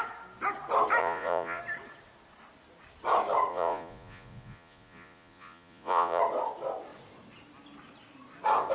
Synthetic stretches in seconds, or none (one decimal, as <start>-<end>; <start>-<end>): 1.0-1.6; 3.5-6.2

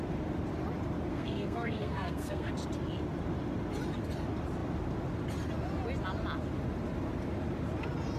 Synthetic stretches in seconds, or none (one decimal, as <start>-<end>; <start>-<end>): 1.1-2.5

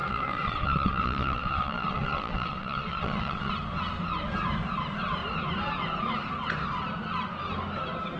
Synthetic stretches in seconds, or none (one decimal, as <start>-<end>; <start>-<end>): 0.0-3.5

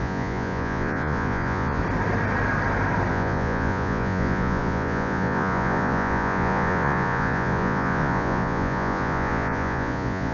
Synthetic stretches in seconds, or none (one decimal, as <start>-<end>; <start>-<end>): 0.0-1.8; 3.1-10.3

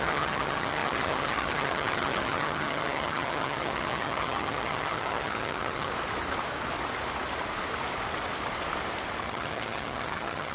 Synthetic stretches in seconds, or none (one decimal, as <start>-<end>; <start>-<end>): 0.0-5.9; 9.2-10.5

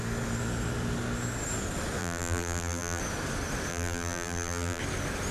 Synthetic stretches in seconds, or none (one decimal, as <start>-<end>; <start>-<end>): 2.0-3.0; 3.7-4.8

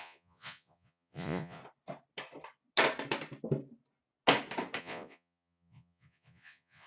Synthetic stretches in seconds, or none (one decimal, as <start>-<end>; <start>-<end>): 0.0-1.6; 4.8-6.9

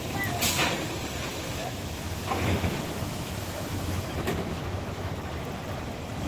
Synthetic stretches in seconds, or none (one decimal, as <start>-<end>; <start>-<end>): 1.3-5.1